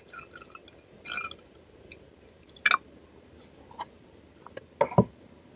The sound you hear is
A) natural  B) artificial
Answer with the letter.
A